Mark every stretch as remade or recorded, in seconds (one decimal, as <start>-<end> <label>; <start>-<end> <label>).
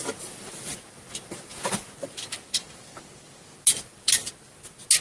0.0-5.0 recorded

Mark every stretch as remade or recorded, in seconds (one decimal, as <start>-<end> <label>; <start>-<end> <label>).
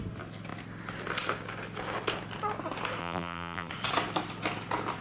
0.0-3.0 recorded; 3.0-3.7 remade; 3.7-5.0 recorded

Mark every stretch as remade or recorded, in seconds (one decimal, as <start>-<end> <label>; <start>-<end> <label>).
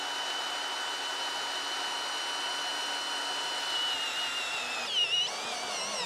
0.0-6.1 recorded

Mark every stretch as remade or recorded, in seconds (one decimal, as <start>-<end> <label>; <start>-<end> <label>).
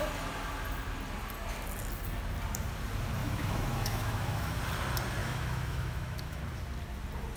0.0-3.2 recorded; 3.2-4.6 remade; 4.6-5.2 recorded; 5.2-6.4 remade; 6.4-7.4 recorded